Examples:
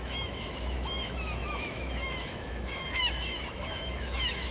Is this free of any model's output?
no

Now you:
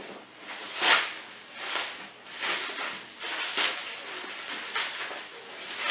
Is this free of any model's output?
yes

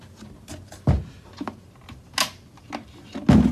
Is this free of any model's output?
yes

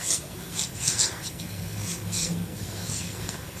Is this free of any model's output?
no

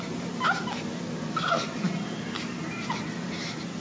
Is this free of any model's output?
yes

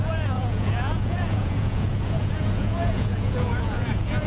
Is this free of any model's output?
no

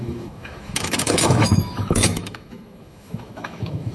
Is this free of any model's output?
no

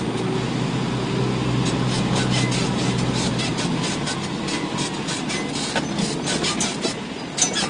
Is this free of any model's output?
yes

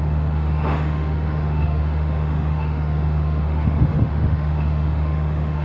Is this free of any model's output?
no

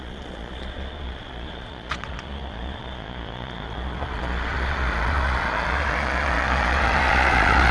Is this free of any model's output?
no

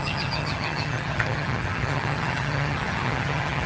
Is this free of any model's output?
no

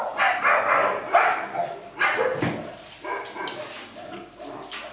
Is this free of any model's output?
yes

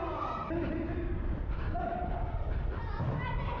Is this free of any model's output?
yes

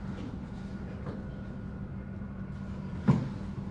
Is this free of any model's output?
yes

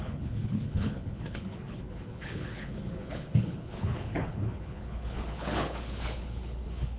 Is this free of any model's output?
no